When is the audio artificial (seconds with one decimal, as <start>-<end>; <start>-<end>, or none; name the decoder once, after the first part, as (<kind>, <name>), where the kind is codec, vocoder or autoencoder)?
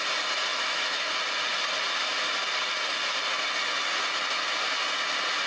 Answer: 0.5-1.1 (autoencoder, DAC-VAE)